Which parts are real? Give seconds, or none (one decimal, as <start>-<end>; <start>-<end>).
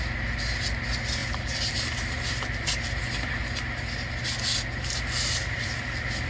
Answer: 0.0-6.3